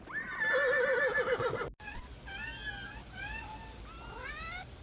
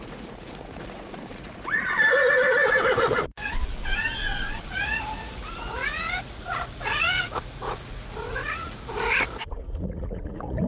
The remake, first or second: second